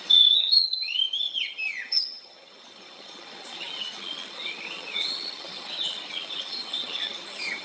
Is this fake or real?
fake